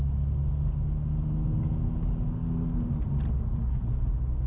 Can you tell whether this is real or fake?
real